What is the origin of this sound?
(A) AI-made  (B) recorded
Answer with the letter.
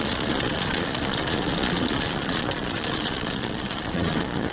A